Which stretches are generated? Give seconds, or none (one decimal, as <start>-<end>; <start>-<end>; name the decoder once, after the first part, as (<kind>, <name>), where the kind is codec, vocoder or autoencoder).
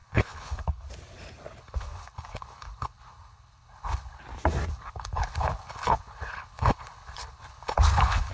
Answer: 0.0-0.9 (codec, HILCodec); 1.6-4.2; 4.7-8.3